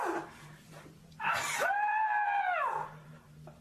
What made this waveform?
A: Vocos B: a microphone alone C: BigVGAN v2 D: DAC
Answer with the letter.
B